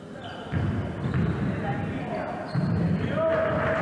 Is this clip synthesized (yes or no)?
no